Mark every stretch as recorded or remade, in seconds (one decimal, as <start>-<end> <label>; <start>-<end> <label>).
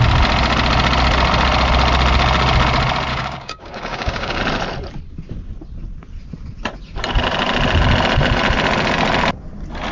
0.0-3.1 recorded; 3.1-4.4 remade; 4.4-9.9 recorded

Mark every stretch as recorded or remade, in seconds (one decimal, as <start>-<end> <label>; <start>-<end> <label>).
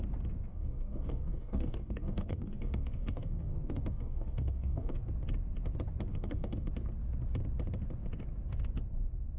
0.0-0.5 recorded; 0.5-5.0 remade; 5.0-6.1 recorded; 6.1-6.7 remade; 6.7-9.4 recorded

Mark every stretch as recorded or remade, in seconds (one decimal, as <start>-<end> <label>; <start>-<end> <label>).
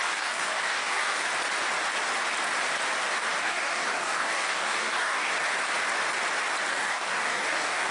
0.0-1.3 remade; 1.3-3.4 recorded; 3.4-5.3 remade; 5.3-6.7 recorded; 6.7-7.9 remade